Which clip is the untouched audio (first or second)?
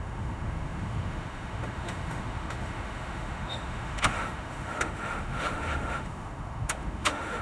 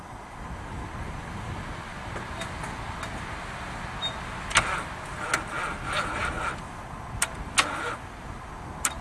second